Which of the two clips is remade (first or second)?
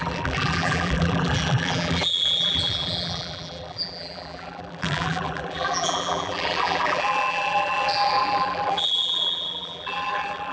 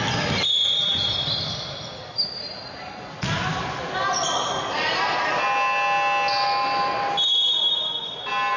first